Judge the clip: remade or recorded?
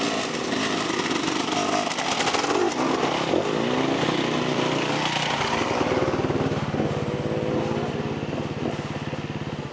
recorded